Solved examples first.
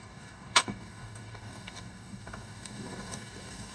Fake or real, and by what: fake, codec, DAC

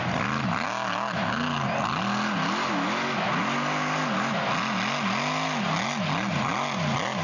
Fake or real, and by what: real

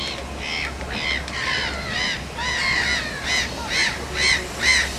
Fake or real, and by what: real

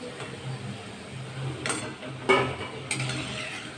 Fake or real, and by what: real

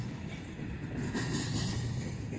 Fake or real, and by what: real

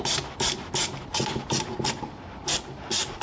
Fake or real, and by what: real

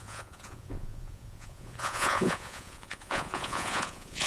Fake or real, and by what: fake, vocoder, Vocos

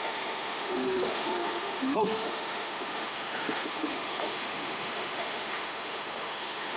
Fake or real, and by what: fake, autoencoder, DAC-VAE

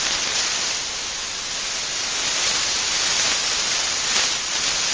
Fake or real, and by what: real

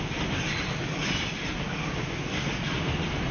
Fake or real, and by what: real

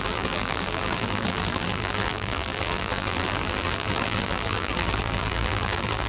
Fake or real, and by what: fake, vocoder, BigVGAN v2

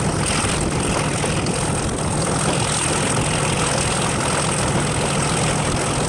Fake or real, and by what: real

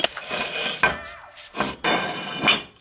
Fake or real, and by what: real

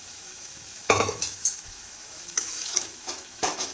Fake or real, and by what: fake, autoencoder, DAC-VAE